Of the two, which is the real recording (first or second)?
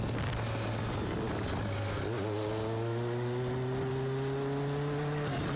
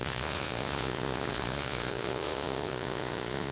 first